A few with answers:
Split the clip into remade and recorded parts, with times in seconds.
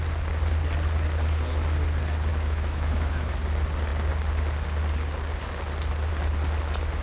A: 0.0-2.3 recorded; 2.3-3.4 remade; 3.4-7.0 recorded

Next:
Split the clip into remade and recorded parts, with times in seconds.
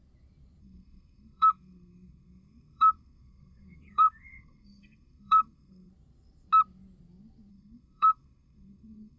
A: 0.0-0.6 recorded; 0.6-5.9 remade; 5.9-7.5 recorded; 7.5-9.2 remade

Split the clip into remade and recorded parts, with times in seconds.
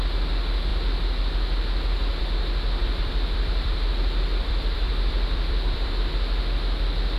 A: 0.0-2.8 recorded; 2.8-6.1 remade; 6.1-7.2 recorded